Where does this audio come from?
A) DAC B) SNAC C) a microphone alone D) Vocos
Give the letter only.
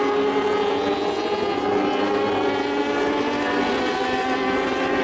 C